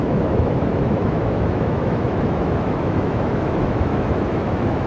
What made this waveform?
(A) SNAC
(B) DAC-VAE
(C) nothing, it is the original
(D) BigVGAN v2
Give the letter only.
B